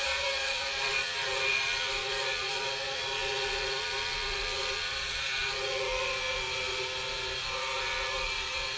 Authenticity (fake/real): fake